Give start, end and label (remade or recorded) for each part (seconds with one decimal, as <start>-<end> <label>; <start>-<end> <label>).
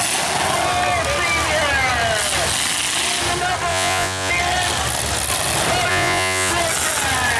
0.0-3.7 recorded; 3.7-4.3 remade; 4.3-5.9 recorded; 5.9-6.5 remade; 6.5-7.4 recorded